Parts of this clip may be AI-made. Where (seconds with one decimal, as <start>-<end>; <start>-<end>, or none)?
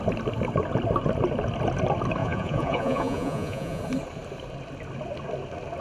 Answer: 2.2-3.8